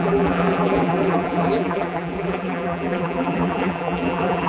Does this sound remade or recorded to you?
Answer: remade